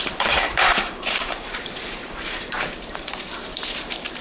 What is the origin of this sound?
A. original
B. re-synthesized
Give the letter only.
B